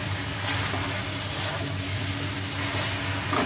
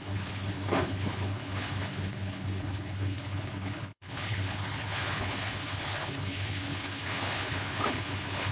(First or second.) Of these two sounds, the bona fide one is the first